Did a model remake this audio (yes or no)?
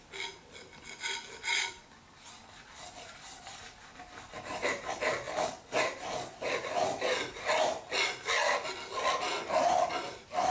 no